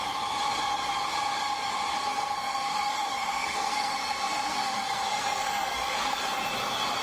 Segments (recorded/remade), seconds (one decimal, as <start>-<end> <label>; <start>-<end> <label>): 0.0-2.0 recorded; 2.0-6.2 remade; 6.2-7.0 recorded